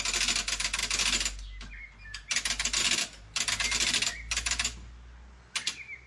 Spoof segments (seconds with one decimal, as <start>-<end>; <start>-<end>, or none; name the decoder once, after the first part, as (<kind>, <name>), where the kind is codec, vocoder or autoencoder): none